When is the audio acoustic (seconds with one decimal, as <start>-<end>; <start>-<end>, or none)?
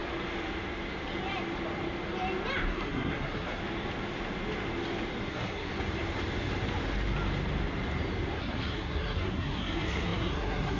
0.0-2.7; 3.6-5.3; 5.7-8.4